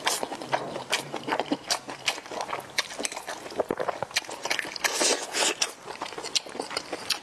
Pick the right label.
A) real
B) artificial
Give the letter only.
B